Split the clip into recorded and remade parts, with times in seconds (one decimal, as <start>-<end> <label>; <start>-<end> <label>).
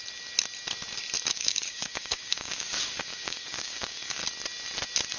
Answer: 0.0-1.3 recorded; 1.3-4.2 remade; 4.2-5.2 recorded